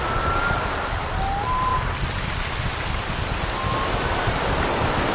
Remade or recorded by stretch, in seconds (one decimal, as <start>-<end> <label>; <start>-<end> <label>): 0.0-5.1 recorded